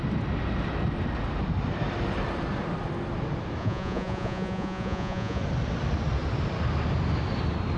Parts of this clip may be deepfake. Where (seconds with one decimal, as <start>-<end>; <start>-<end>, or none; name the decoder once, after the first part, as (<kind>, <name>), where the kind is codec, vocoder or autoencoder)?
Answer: 3.6-5.4 (vocoder, Vocos)